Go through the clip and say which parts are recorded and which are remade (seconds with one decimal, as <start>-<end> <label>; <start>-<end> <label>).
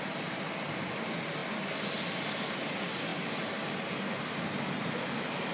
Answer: 0.0-5.5 recorded